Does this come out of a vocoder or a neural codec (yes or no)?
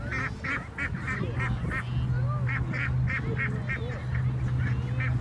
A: no